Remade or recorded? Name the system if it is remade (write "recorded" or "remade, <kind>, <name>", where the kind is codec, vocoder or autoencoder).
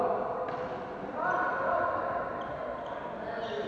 recorded